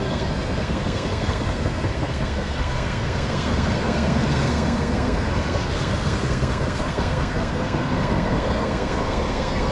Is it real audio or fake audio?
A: fake